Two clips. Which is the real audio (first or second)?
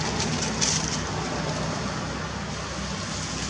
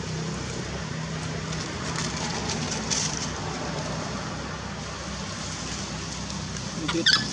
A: first